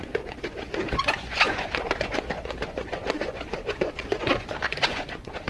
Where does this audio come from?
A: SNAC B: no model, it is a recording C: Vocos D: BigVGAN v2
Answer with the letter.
C